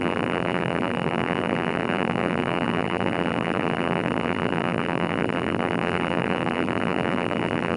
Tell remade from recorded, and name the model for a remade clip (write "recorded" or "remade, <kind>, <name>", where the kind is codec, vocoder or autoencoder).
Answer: remade, vocoder, BigVGAN v2